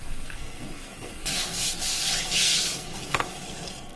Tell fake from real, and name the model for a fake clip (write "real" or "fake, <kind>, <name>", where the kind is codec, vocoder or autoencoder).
fake, codec, SNAC